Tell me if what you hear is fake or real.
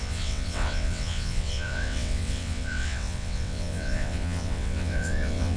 fake